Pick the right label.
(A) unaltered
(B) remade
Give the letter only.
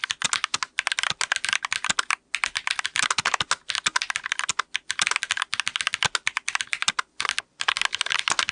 A